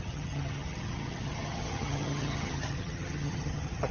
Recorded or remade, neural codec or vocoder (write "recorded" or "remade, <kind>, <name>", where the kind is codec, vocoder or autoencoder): remade, vocoder, HiFi-GAN